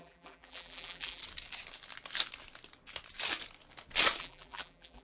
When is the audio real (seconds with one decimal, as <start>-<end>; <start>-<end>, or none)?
1.2-4.2